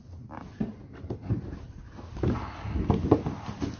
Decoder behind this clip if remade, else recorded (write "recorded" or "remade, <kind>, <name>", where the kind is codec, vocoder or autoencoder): recorded